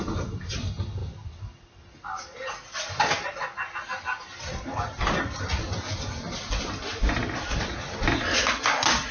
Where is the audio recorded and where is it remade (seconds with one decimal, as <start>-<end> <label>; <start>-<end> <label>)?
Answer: 0.0-9.1 recorded